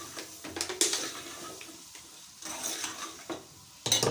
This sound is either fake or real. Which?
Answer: real